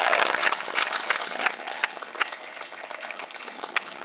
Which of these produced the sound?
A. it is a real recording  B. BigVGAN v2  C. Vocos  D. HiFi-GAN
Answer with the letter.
D